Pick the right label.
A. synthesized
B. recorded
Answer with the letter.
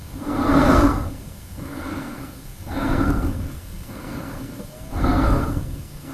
A